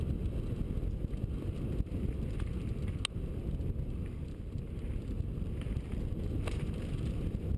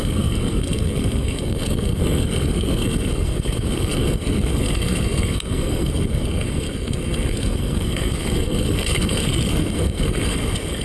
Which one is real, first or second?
first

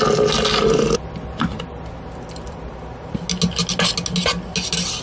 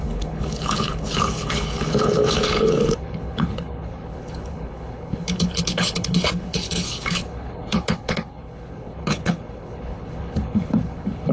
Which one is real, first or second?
first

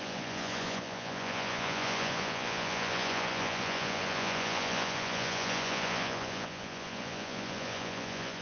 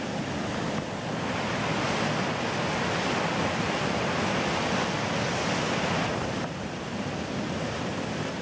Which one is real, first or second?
second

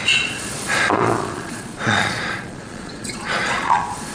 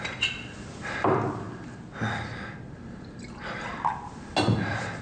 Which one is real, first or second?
second